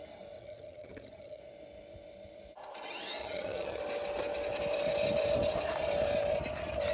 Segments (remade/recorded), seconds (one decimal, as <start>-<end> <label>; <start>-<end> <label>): 0.0-0.4 recorded; 0.4-1.4 remade; 1.4-3.2 recorded; 3.2-3.8 remade; 3.8-6.9 recorded